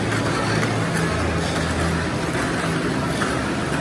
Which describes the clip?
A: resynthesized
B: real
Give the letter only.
B